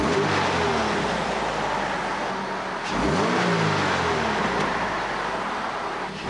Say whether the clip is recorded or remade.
recorded